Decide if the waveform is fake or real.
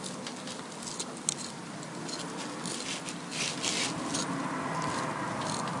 real